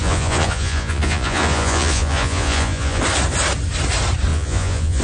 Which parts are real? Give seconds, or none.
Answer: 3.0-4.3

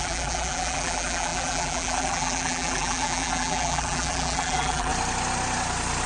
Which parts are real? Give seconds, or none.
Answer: 4.9-6.1

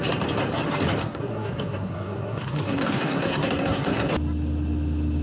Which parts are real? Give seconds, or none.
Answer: 0.0-1.0; 4.1-5.2

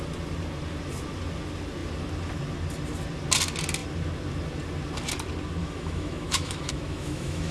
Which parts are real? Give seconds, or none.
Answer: 0.0-5.6

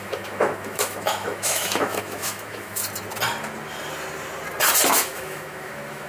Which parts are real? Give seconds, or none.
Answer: 2.8-4.9